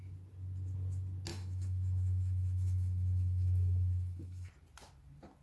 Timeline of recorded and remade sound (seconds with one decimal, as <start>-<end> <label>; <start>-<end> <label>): 0.0-1.3 recorded; 1.3-4.5 remade; 4.5-5.4 recorded